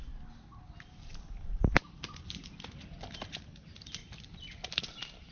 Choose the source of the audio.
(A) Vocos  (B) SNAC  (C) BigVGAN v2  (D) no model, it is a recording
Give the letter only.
D